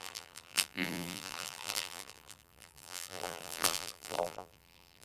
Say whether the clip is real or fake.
fake